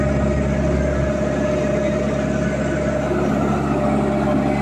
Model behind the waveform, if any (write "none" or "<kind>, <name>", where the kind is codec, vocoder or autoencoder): none